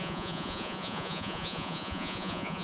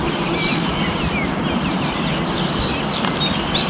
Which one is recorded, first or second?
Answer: second